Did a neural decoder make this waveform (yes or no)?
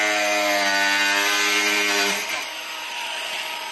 no